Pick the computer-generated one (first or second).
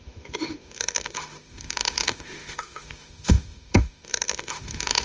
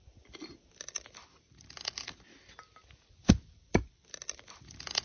first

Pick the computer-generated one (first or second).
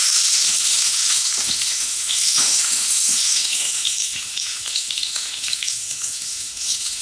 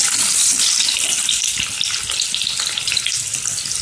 first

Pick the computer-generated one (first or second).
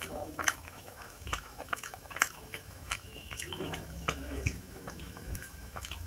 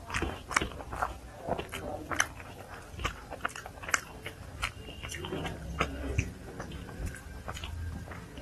first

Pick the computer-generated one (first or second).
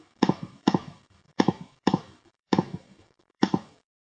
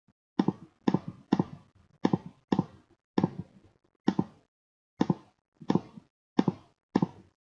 first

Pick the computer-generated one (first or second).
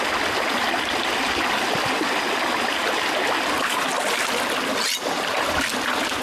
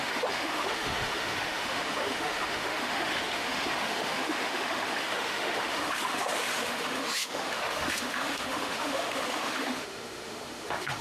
second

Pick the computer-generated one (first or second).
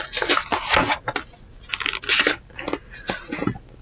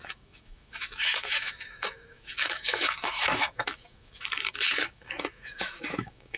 second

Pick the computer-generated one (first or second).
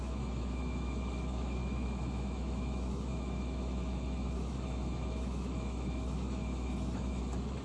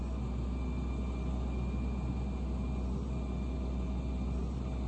first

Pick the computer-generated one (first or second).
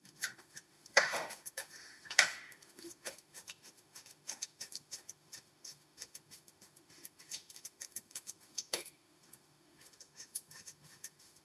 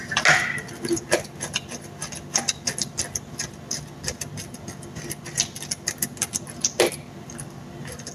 first